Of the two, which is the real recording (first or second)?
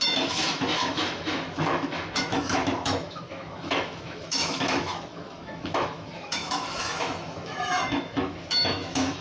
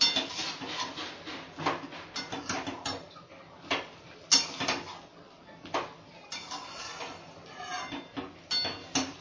second